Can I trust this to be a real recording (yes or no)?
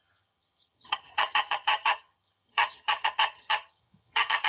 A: no